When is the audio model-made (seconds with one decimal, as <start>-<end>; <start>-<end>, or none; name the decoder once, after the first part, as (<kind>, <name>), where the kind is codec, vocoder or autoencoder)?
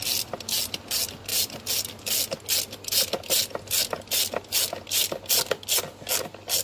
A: none